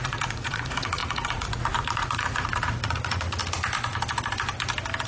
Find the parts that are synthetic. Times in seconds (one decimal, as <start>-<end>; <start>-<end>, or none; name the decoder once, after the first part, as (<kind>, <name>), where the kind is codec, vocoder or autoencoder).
0.0-3.4 (vocoder, Vocos)

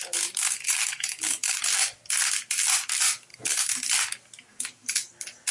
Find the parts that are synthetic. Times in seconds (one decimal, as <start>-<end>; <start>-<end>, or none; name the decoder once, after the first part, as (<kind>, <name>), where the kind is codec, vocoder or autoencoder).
0.4-1.6 (codec, DAC); 3.3-3.9; 4.5-5.1

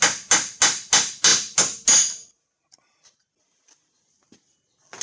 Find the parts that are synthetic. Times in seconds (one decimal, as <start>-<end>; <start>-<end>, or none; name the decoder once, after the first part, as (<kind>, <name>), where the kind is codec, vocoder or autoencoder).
none

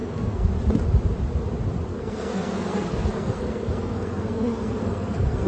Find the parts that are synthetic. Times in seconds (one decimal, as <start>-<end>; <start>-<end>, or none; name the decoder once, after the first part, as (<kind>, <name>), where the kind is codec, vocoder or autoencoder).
0.0-0.5 (codec, SNAC); 1.9-5.5

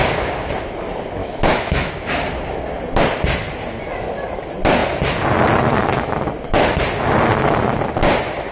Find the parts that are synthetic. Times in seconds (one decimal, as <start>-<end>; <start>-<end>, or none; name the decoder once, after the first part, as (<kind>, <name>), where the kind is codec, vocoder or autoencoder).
1.2-1.9 (autoencoder, DAC-VAE)

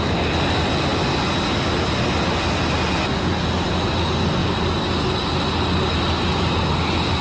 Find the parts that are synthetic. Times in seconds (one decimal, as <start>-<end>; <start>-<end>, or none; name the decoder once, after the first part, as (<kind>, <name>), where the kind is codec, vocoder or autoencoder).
none